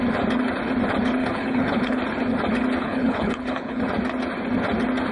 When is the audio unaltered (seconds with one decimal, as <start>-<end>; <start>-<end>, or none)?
0.0-1.2; 2.0-2.8; 3.8-5.1